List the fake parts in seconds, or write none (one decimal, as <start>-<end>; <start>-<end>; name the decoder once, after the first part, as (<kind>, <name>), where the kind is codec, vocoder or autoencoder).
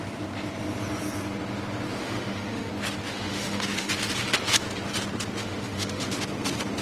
2.0-2.7 (autoencoder, DAC-VAE); 3.1-3.9; 5.4-6.1